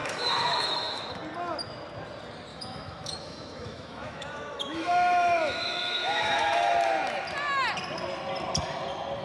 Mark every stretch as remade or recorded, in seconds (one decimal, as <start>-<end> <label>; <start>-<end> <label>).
0.0-1.0 remade; 1.0-2.5 recorded; 2.5-6.7 remade; 6.7-9.2 recorded